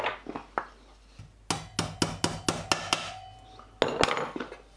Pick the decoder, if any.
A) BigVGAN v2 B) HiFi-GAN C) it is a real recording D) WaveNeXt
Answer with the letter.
C